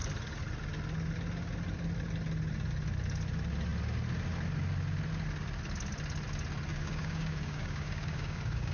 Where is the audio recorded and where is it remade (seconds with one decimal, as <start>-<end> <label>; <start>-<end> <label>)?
0.0-6.7 recorded; 6.7-8.7 remade